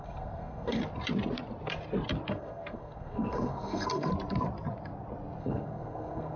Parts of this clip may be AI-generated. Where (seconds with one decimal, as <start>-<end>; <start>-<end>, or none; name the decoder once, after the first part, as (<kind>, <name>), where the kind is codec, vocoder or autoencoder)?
0.0-0.8 (codec, SNAC); 2.3-4.1; 5.4-6.4